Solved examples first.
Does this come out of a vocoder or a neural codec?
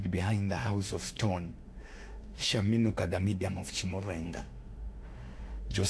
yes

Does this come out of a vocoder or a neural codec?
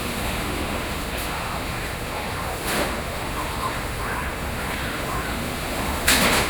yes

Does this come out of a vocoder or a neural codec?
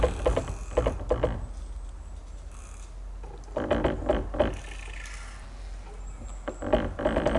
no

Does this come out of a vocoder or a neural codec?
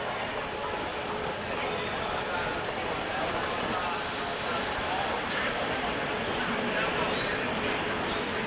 no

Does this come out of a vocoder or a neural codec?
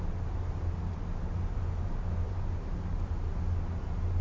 no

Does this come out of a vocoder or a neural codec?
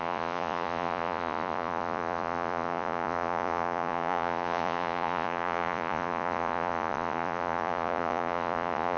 yes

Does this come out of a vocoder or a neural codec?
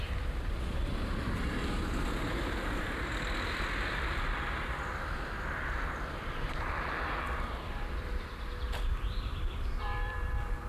yes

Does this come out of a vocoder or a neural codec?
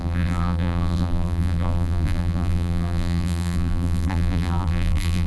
yes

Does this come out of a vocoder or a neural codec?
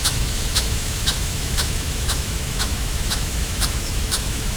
yes